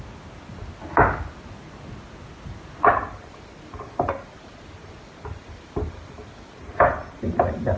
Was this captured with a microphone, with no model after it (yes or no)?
yes